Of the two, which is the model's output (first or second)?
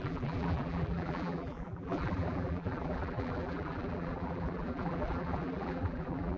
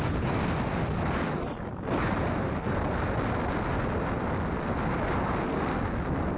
first